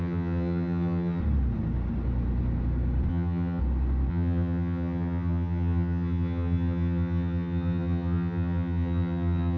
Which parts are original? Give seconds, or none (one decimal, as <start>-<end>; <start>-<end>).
1.2-3.1; 3.6-4.1